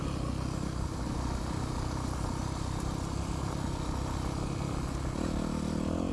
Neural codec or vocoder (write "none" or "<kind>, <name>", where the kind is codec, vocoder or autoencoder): none